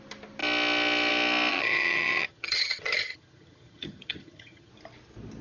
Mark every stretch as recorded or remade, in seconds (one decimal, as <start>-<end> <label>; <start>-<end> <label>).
0.0-1.5 recorded; 1.5-4.7 remade; 4.7-5.4 recorded